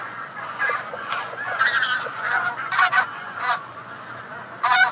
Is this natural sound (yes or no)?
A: no